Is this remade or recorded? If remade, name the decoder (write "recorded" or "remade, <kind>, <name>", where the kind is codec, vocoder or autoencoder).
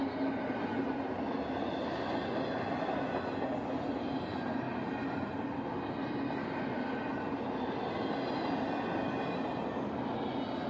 recorded